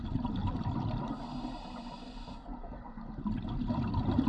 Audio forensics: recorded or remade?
recorded